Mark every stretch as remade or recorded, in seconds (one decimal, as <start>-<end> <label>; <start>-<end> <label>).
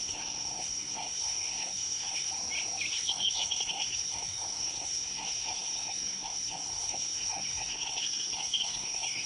0.0-2.3 remade; 2.3-2.9 recorded; 2.9-9.3 remade